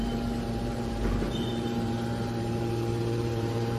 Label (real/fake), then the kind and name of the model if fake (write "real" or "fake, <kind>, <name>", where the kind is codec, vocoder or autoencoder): fake, vocoder, BigVGAN v2